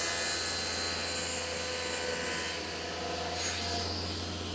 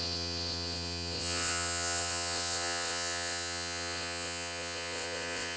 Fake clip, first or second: second